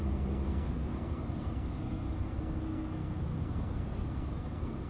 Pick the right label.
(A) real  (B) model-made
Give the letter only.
B